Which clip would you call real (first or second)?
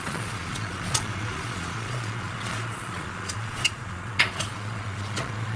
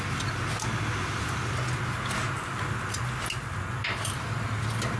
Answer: second